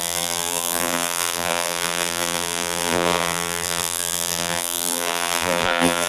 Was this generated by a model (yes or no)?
yes